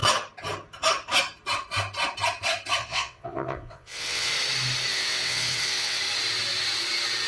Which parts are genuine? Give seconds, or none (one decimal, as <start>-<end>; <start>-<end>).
0.0-2.8; 4.3-4.9; 6.0-7.3